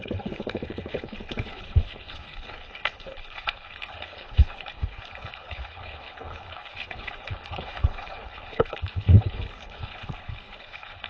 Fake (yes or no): yes